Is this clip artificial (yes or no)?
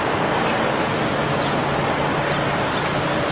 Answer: no